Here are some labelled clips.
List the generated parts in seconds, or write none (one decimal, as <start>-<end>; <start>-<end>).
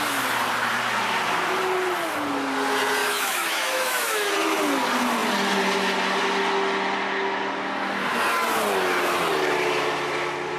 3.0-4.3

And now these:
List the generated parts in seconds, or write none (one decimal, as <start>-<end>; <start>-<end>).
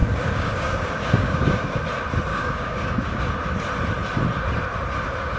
0.0-1.8; 2.3-3.2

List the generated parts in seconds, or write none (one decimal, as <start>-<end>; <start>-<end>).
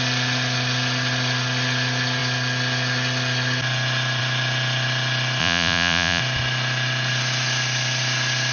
5.4-6.2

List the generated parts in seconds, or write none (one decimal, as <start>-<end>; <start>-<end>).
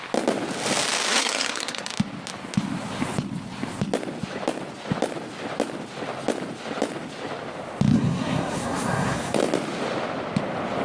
1.1-1.9; 7.9-9.4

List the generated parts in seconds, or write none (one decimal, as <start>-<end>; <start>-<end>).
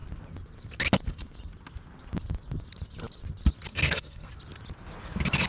3.7-4.3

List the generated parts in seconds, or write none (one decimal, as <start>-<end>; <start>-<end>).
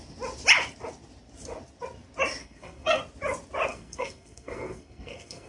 2.4-3.0; 3.7-5.5